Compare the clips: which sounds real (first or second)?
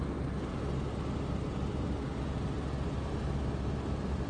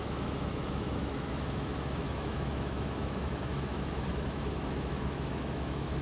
first